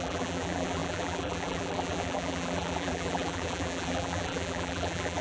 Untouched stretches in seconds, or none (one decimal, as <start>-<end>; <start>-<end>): none

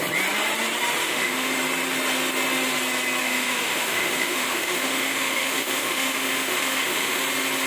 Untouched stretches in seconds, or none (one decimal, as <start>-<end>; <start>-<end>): 0.0-1.0; 1.6-3.2; 7.2-7.7

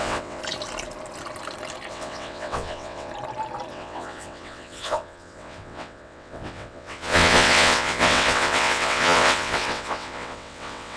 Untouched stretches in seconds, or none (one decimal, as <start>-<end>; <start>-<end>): 0.4-1.9; 3.1-3.7

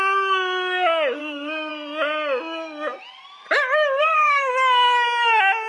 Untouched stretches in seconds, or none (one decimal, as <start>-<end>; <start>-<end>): 0.0-1.2; 1.7-4.0; 4.5-5.7